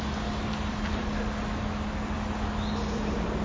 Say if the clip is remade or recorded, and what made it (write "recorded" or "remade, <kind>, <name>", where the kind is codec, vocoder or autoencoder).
recorded